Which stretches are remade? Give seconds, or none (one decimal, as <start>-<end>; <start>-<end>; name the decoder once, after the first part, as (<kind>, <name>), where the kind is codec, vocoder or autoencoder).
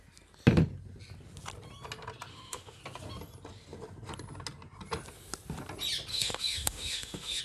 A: 2.3-2.8 (autoencoder, DAC-VAE); 6.1-7.4